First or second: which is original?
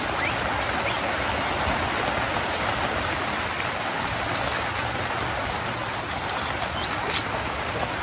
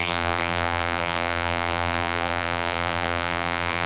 first